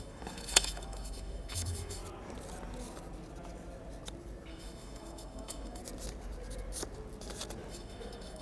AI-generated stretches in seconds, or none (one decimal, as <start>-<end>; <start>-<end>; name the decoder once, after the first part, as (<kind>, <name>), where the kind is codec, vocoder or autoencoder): 0.0-2.0 (autoencoder, DAC-VAE); 4.5-5.8; 7.7-8.4